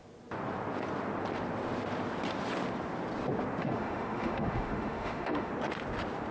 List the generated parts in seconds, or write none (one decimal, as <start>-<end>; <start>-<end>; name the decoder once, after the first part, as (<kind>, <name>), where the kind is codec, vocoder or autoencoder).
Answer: 3.6-5.5 (autoencoder, DAC-VAE)